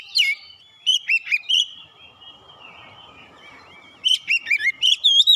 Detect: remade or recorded remade